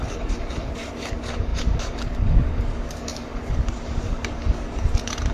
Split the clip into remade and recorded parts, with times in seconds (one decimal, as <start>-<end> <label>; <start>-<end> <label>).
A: 0.0-5.3 remade